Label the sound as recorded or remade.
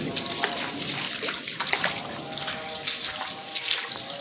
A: recorded